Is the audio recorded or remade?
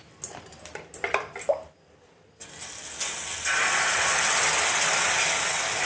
recorded